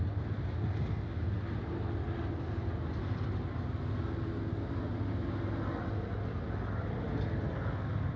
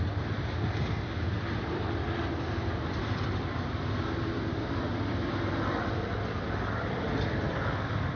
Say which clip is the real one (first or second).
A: first